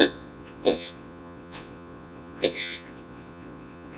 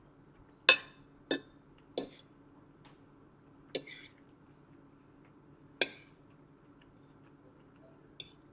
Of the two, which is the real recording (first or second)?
second